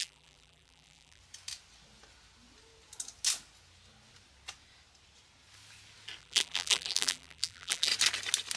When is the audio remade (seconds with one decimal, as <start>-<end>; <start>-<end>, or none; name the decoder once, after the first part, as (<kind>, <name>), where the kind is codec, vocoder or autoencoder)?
0.0-1.2 (vocoder, BigVGAN v2); 6.2-7.9